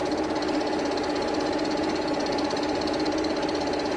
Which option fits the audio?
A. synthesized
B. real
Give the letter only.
B